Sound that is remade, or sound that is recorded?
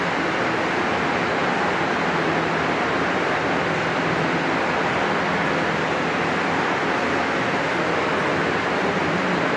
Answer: recorded